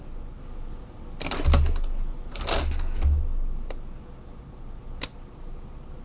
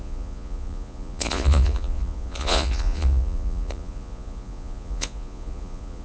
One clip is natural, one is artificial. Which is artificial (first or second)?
second